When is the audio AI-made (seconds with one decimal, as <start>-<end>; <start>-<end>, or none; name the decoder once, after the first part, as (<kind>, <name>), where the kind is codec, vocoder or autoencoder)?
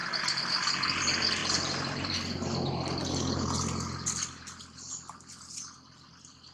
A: 1.4-5.3 (vocoder, BigVGAN v2)